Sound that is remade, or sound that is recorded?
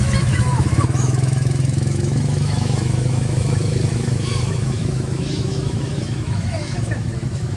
remade